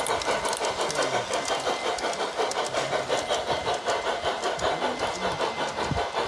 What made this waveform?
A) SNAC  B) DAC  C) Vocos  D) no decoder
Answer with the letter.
D